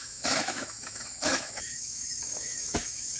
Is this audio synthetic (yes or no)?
yes